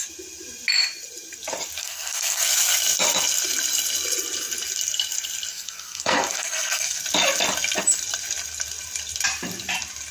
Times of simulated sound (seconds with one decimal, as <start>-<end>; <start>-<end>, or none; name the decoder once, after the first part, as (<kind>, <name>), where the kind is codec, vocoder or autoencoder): 1.8-2.4 (codec, SNAC); 5.5-7.0